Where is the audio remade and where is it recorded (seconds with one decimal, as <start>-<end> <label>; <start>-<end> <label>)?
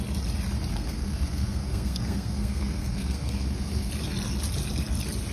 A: 0.0-0.7 recorded; 0.7-3.9 remade; 3.9-5.3 recorded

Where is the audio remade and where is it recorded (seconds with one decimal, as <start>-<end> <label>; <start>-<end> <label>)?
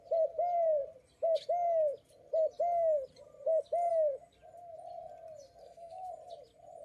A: 0.0-5.6 recorded; 5.6-6.1 remade; 6.1-6.8 recorded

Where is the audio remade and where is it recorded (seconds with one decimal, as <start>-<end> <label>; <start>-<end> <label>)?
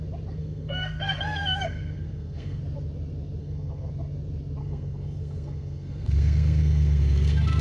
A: 0.0-0.4 recorded; 0.4-2.6 remade; 2.6-3.4 recorded; 3.4-3.9 remade; 3.9-4.6 recorded; 4.6-7.6 remade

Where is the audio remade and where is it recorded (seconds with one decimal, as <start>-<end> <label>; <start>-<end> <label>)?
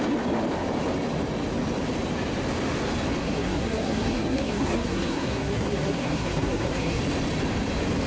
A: 0.0-3.2 recorded; 3.2-7.0 remade; 7.0-8.1 recorded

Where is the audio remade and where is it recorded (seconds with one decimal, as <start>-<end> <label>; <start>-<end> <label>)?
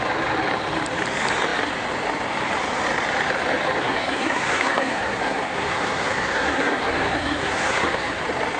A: 0.0-3.8 recorded; 3.8-8.2 remade; 8.2-8.6 recorded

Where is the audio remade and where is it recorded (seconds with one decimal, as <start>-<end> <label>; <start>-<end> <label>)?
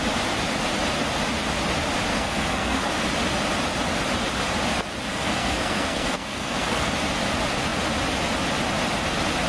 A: 0.0-2.1 recorded; 2.1-2.9 remade; 2.9-5.1 recorded; 5.1-6.9 remade; 6.9-9.5 recorded